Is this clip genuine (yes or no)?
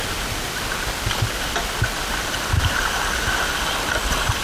yes